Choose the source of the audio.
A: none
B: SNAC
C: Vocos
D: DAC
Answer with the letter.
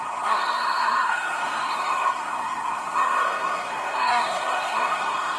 B